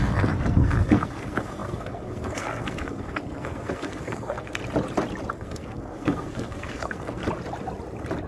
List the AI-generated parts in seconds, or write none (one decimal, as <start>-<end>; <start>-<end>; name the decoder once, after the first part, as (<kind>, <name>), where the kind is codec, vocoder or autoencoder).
0.0-4.6 (codec, SNAC); 5.3-7.2